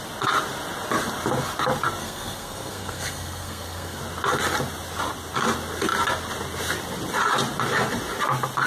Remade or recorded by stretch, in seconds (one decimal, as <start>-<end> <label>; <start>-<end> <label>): 0.0-2.0 recorded; 2.0-4.0 remade; 4.0-8.7 recorded